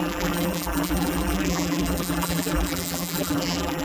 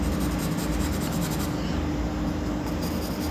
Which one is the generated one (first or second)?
first